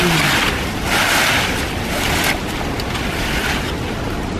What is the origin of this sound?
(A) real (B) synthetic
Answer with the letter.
B